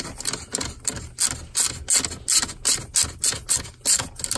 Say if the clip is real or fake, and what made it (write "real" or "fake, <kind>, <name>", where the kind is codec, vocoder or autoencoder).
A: real